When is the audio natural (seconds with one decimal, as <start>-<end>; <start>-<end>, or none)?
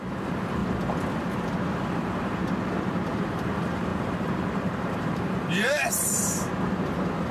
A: 0.6-1.8; 2.4-3.2; 6.5-7.3